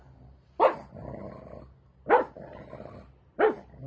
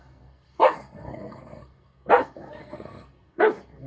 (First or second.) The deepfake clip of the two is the second